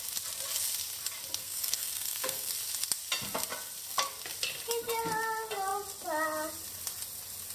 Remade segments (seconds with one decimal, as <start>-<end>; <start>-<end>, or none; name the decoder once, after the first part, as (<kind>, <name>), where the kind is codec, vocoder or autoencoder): 1.4-2.5 (codec, SNAC)